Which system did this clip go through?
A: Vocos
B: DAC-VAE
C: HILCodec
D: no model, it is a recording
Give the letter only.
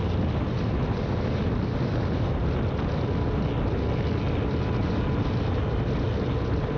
D